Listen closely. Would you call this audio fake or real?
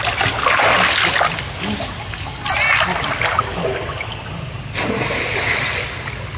real